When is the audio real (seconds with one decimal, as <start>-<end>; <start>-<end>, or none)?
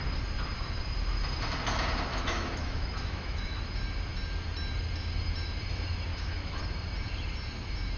0.0-2.1; 3.6-6.1; 6.6-8.0